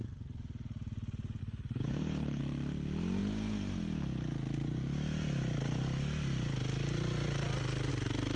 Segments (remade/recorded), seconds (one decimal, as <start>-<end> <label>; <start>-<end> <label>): 0.0-1.4 recorded; 1.4-2.4 remade; 2.4-8.4 recorded